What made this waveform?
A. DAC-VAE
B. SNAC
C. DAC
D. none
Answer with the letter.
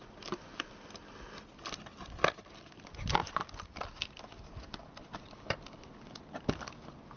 D